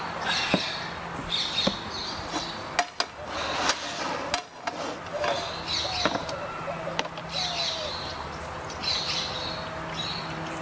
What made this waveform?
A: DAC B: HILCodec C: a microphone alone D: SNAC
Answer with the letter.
C